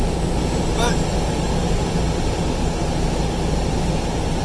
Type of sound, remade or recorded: recorded